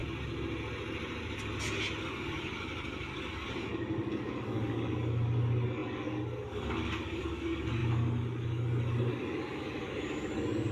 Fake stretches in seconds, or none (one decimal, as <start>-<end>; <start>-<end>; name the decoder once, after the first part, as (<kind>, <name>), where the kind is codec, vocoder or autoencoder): 2.0-10.7 (codec, DAC)